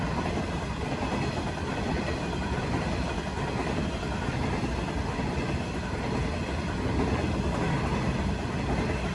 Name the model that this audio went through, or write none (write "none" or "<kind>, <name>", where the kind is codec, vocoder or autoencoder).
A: none